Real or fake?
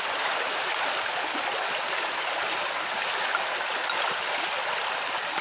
real